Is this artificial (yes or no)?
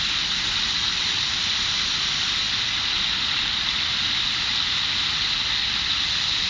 no